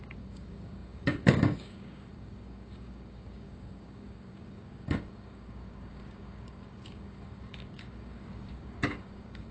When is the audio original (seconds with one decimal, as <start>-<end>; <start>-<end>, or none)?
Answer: none